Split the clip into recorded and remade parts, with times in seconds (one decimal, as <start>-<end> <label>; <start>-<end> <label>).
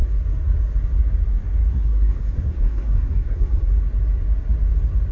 0.0-1.7 recorded; 1.7-3.7 remade; 3.7-5.1 recorded